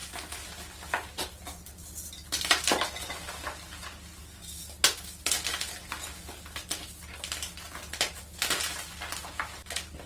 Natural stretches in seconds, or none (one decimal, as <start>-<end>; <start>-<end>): 0.0-10.1